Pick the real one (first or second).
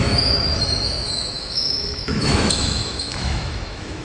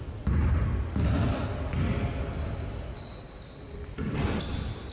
second